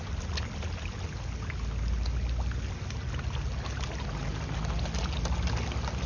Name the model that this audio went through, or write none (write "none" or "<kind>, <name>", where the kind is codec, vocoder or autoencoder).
none